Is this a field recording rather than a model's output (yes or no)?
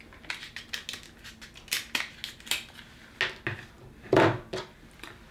yes